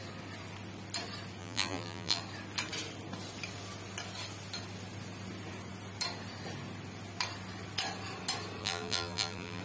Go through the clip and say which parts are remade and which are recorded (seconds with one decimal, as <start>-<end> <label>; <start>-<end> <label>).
0.0-1.4 recorded; 1.4-2.2 remade; 2.2-8.6 recorded; 8.6-9.6 remade